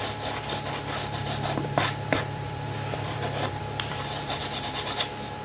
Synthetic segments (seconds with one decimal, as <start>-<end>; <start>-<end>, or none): 1.2-4.4